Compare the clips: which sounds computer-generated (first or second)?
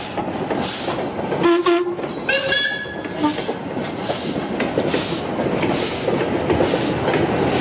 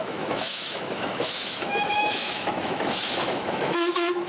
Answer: second